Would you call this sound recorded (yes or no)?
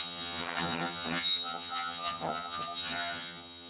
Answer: no